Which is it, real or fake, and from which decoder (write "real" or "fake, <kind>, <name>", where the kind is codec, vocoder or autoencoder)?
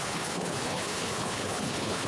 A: fake, codec, HILCodec